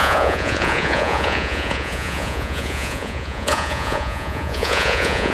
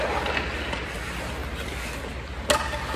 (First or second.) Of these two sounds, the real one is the second